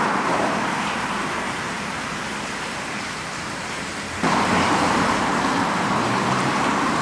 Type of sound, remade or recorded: remade